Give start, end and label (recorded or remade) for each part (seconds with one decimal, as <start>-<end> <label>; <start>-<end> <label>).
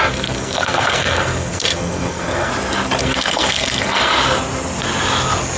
0.0-2.5 remade; 2.5-3.0 recorded; 3.0-4.1 remade; 4.1-5.6 recorded